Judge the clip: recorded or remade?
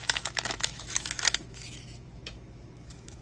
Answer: remade